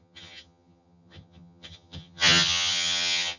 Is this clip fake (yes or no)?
yes